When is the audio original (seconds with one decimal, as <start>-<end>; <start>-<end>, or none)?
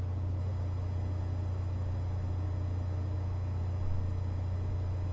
0.0-5.1